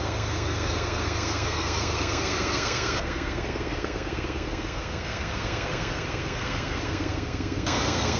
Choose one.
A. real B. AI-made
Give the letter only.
B